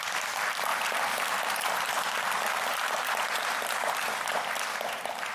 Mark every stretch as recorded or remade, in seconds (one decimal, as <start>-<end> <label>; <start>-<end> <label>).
0.0-0.7 remade; 0.7-3.7 recorded; 3.7-5.3 remade